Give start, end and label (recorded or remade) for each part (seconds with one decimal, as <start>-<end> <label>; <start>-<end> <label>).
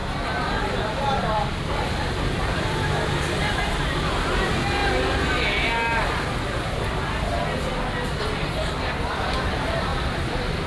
0.0-4.8 remade; 4.8-9.0 recorded; 9.0-10.7 remade